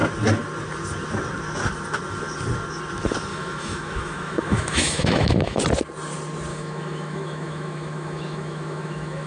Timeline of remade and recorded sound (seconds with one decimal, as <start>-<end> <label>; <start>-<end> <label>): 0.0-3.3 recorded; 3.3-5.6 remade; 5.6-6.5 recorded; 6.5-9.3 remade